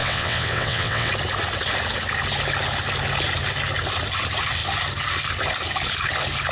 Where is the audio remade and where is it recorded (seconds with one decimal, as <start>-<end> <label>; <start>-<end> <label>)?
0.0-1.1 remade; 1.1-6.5 recorded